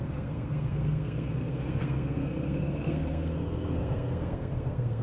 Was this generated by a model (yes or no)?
yes